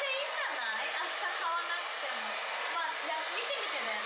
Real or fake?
real